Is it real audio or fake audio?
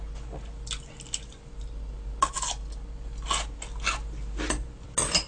real